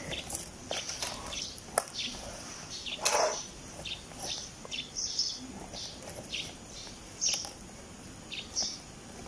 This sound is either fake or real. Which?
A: real